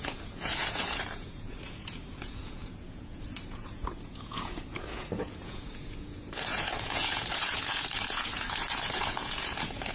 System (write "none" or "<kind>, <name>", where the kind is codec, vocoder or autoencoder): vocoder, Vocos